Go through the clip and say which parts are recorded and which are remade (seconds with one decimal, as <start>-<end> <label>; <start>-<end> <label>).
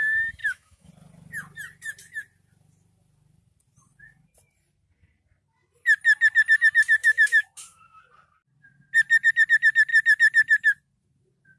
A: 0.0-0.4 recorded; 0.4-0.9 remade; 0.9-7.0 recorded; 7.0-8.0 remade; 8.0-11.6 recorded